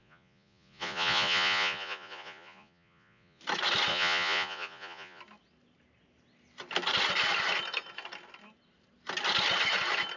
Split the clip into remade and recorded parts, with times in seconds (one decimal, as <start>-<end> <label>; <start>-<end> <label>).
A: 0.0-3.4 remade; 3.4-3.9 recorded; 3.9-5.2 remade; 5.2-10.2 recorded